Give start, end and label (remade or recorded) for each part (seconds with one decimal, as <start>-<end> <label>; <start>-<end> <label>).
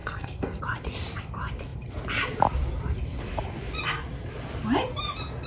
0.0-0.6 remade; 0.6-5.5 recorded